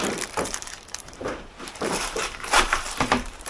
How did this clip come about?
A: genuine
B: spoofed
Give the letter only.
B